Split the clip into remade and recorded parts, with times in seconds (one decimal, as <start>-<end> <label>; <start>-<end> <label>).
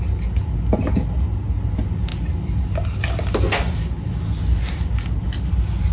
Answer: 0.0-5.9 recorded